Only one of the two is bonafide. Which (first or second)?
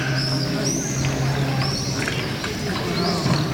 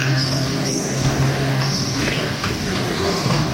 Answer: first